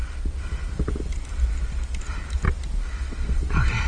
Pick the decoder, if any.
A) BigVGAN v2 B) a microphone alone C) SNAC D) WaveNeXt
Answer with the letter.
B